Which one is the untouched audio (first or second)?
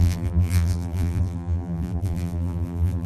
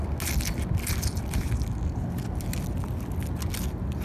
second